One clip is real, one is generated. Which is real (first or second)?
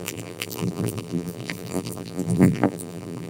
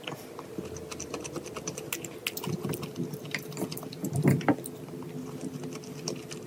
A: second